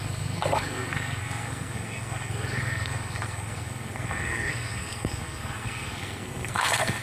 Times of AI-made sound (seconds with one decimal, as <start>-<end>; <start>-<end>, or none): 0.0-7.0